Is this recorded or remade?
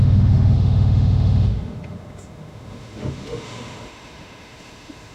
remade